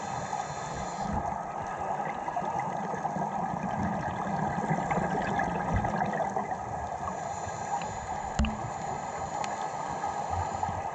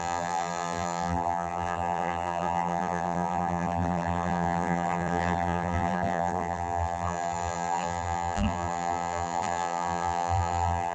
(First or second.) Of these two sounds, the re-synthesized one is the second